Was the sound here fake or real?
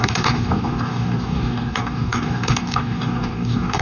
fake